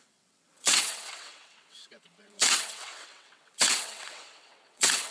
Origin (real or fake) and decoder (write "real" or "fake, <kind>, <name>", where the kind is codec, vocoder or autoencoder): fake, vocoder, WaveNeXt